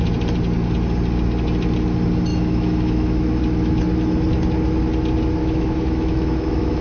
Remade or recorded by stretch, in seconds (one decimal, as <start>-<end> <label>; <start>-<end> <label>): 0.0-2.3 recorded; 2.3-3.4 remade; 3.4-5.4 recorded; 5.4-6.8 remade